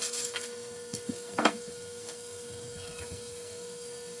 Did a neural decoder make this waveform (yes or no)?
yes